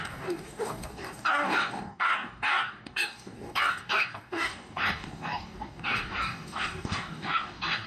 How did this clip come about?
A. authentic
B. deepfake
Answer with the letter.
B